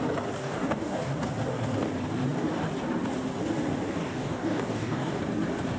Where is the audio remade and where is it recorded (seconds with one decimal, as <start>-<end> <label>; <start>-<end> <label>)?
0.0-0.4 recorded; 0.4-1.1 remade; 1.1-4.0 recorded; 4.0-5.2 remade; 5.2-5.8 recorded